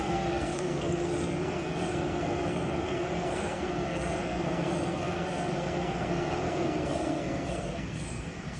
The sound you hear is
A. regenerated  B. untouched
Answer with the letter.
A